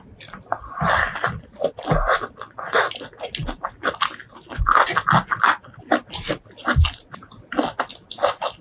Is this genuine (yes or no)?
yes